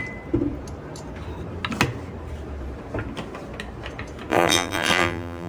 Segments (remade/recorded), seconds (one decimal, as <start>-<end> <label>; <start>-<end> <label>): 0.0-4.3 recorded; 4.3-5.5 remade